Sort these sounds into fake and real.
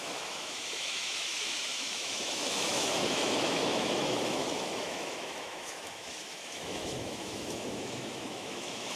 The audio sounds fake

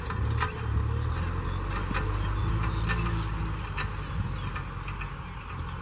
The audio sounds real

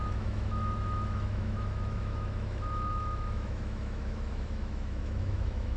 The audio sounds fake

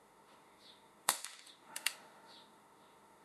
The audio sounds fake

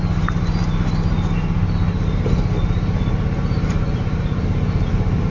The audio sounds real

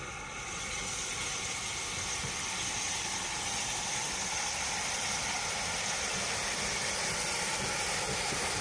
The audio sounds real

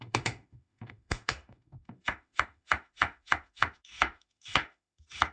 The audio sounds fake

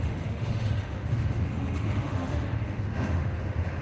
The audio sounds fake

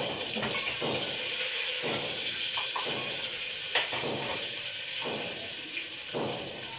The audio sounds real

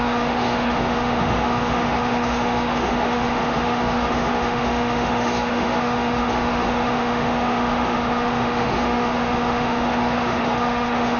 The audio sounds fake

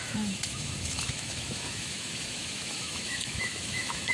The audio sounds fake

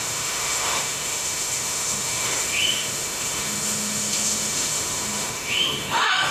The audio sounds fake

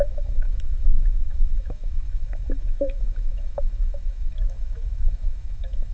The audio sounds fake